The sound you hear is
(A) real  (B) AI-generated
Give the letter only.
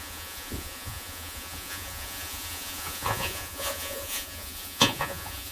B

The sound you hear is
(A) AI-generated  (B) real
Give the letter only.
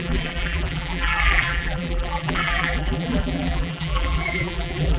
A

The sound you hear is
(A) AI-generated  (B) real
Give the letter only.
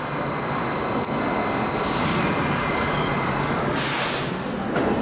B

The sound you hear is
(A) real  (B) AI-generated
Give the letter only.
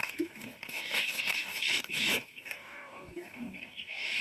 B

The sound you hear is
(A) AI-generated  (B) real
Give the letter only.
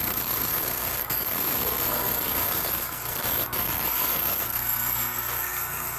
A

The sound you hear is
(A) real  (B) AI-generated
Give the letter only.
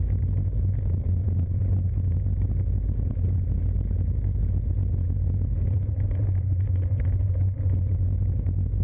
A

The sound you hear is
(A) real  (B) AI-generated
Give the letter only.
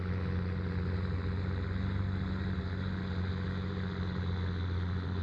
A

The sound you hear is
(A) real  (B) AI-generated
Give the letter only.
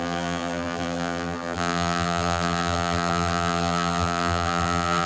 B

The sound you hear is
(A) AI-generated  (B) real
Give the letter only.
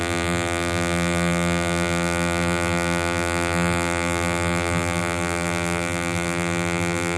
A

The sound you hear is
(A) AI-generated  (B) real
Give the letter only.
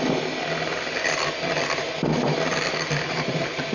B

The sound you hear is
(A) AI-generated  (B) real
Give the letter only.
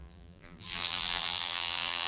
A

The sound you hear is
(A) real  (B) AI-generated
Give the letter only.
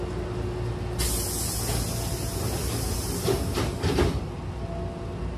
A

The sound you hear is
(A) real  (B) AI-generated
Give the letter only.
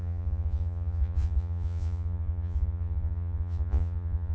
B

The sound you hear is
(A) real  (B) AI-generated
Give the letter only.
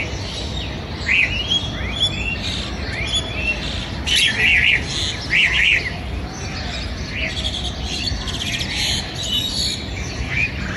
A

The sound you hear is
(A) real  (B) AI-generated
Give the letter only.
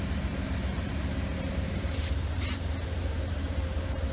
B